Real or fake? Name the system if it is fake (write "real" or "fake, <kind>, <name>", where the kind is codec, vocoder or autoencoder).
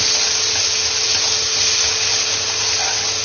real